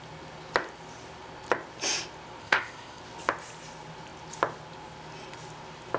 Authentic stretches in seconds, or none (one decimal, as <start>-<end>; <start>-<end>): 0.0-2.4; 3.0-6.0